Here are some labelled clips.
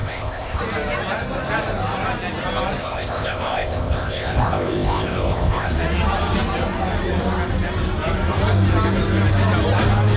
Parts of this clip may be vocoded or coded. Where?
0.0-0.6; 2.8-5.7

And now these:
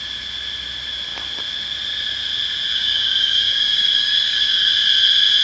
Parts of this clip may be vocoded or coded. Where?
2.7-4.7

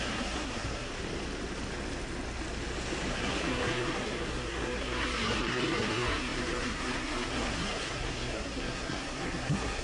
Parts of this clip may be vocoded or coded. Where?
0.0-0.9; 3.1-9.8

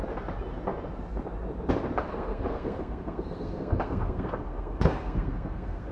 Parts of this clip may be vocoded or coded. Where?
2.1-5.9

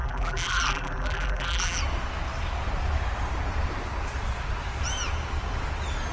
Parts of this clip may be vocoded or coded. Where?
0.0-1.8

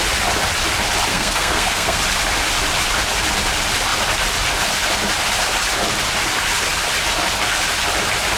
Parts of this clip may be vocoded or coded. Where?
1.1-2.0